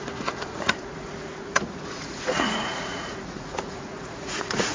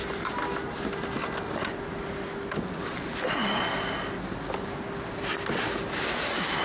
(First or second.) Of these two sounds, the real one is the second